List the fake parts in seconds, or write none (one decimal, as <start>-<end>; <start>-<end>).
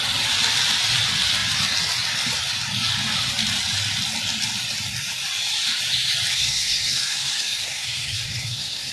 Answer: 6.3-8.9